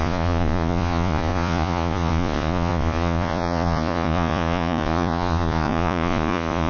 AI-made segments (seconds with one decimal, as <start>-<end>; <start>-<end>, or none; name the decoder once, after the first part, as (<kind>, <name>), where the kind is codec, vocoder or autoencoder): 0.0-6.7 (vocoder, Vocos)